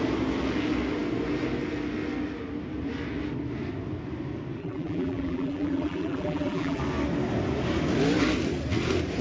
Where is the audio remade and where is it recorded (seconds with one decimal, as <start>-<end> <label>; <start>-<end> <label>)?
0.0-4.6 recorded; 4.6-6.8 remade; 6.8-9.2 recorded